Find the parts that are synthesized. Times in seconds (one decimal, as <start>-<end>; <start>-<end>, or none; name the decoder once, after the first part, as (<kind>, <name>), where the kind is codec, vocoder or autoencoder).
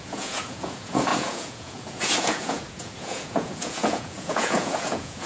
0.0-5.3 (vocoder, Vocos)